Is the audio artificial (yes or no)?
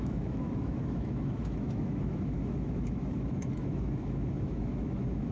yes